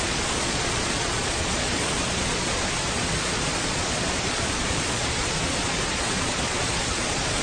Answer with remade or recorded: remade